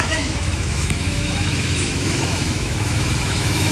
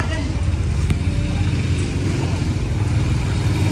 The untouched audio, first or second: second